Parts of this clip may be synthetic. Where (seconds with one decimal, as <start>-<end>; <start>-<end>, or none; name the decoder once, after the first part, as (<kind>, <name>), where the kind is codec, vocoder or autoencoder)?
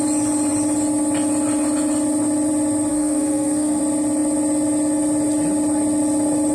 2.9-3.8 (codec, SNAC)